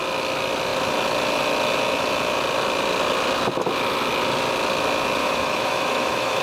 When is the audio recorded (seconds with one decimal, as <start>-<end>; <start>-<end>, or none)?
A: 0.0-5.2